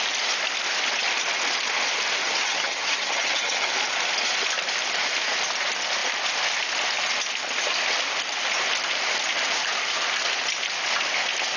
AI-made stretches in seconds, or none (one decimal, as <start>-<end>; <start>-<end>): 2.2-3.7